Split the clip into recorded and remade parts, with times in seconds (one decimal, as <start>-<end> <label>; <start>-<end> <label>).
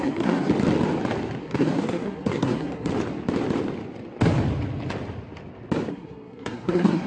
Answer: 0.0-0.5 remade; 0.5-1.4 recorded; 1.4-2.9 remade; 2.9-5.9 recorded; 5.9-7.1 remade